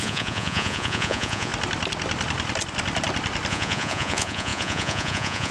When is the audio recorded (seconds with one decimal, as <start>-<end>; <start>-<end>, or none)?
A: 1.5-3.5